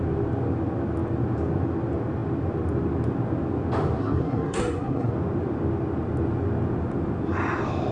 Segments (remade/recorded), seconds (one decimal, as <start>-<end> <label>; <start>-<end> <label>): 0.0-4.0 recorded; 4.0-5.1 remade; 5.1-7.9 recorded